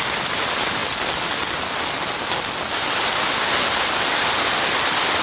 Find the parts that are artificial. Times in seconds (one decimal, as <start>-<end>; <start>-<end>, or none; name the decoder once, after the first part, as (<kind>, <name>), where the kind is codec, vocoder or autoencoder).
none